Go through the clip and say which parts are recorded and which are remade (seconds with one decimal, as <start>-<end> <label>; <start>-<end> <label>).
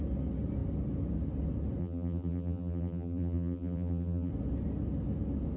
0.0-1.8 recorded; 1.8-4.3 remade; 4.3-5.6 recorded